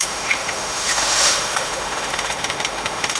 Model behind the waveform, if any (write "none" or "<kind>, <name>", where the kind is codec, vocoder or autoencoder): autoencoder, DAC-VAE